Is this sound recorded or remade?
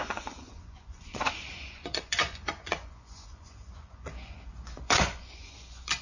remade